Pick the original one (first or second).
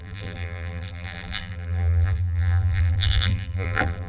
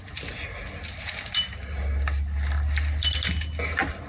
second